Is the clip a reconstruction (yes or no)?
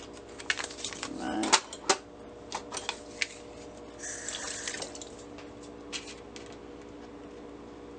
no